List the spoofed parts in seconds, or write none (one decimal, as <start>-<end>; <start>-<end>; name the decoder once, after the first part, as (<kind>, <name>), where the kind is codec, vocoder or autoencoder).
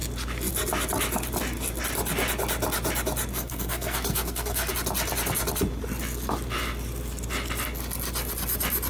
3.3-4.7 (codec, SNAC)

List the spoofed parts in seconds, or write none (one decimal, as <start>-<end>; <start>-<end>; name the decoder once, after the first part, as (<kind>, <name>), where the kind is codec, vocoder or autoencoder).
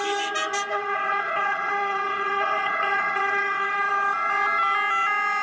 0.7-3.9 (vocoder, WaveNeXt)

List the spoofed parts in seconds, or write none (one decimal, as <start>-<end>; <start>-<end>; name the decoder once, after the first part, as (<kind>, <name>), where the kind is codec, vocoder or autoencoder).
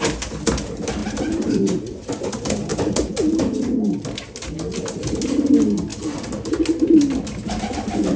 none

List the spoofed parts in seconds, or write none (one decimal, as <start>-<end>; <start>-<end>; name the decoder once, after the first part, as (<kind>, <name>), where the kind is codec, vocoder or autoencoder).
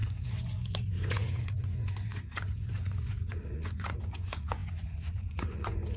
0.0-6.0 (vocoder, Vocos)